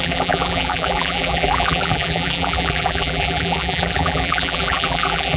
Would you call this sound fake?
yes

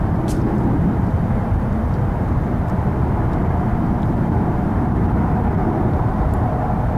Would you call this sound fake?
yes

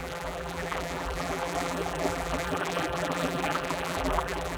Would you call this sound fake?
yes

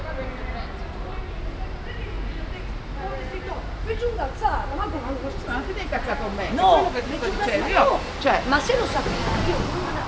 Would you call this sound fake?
no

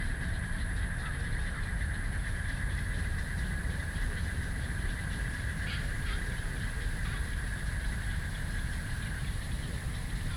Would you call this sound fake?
yes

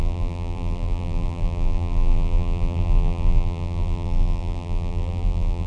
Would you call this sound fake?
yes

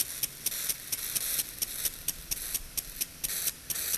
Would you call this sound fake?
no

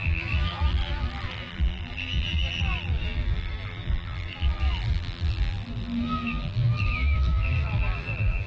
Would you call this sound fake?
yes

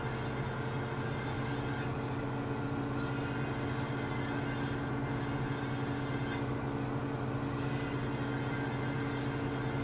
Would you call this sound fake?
no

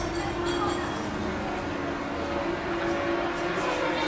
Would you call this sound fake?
no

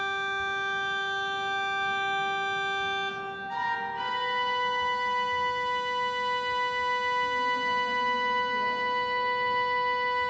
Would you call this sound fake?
no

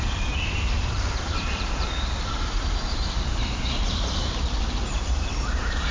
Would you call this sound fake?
yes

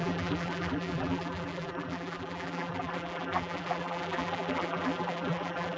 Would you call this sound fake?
yes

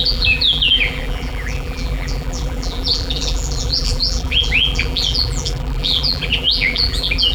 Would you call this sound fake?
yes